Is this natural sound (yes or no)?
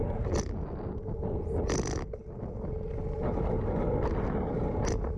yes